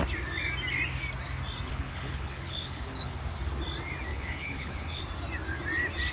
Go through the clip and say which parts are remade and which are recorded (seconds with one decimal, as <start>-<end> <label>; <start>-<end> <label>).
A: 0.0-1.7 recorded; 1.7-3.2 remade; 3.2-4.1 recorded; 4.1-5.0 remade; 5.0-6.1 recorded